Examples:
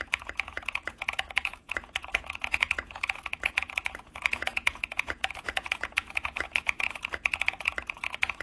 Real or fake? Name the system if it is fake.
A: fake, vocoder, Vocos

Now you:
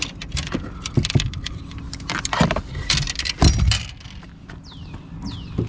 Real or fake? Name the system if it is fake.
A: real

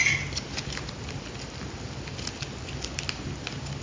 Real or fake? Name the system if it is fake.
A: real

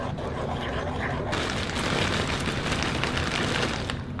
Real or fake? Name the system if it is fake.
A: real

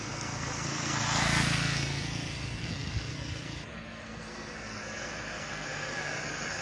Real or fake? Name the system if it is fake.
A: fake, codec, SNAC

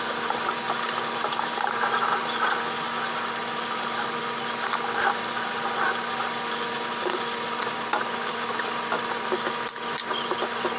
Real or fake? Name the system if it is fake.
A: real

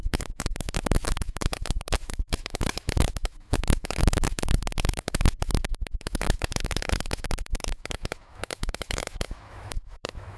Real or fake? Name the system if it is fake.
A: fake, autoencoder, DAC-VAE